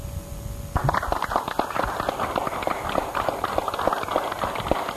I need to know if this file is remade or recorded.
recorded